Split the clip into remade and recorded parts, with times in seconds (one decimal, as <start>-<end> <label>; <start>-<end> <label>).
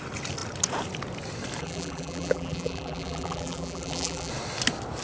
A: 0.0-1.6 recorded; 1.6-4.3 remade; 4.3-5.0 recorded